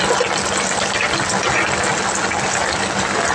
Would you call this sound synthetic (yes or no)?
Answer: no